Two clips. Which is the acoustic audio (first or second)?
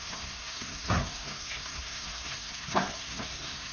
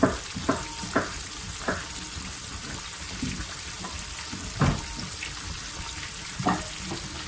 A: second